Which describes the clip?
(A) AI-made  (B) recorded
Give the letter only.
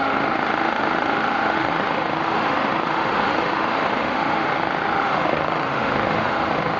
A